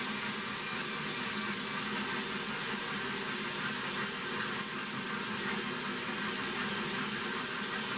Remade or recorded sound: recorded